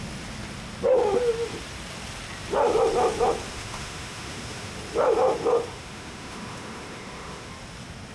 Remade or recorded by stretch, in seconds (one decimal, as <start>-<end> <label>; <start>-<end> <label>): 0.0-3.5 recorded; 3.5-4.7 remade; 4.7-5.7 recorded; 5.7-7.5 remade; 7.5-8.1 recorded